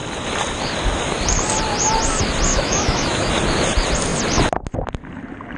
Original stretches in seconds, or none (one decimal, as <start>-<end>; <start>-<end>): 0.0-2.5; 3.3-5.6